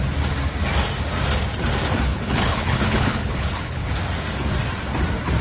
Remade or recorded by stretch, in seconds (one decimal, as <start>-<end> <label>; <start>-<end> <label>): 0.0-2.1 recorded; 2.1-3.9 remade; 3.9-5.4 recorded